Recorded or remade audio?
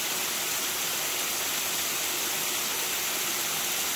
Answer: recorded